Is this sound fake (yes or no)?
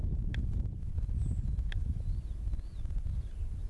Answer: no